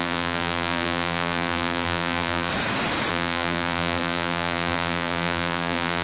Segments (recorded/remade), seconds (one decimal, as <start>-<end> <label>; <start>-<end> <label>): 0.0-2.5 remade; 2.5-3.1 recorded; 3.1-6.0 remade